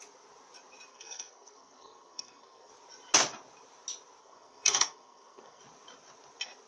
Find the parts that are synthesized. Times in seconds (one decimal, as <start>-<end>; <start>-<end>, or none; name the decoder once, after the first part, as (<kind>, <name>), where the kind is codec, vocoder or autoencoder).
0.9-2.7 (codec, SNAC); 4.2-5.6